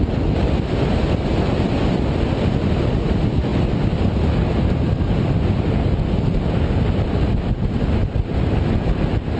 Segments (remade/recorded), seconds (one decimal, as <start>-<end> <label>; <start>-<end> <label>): 0.0-9.4 recorded